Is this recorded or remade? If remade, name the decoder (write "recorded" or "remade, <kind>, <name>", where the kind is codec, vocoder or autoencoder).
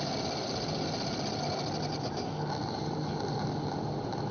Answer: recorded